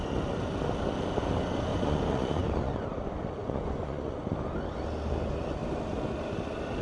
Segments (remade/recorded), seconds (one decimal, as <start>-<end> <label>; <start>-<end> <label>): 0.0-1.7 recorded; 1.7-2.8 remade; 2.8-3.4 recorded; 3.4-4.2 remade; 4.2-6.8 recorded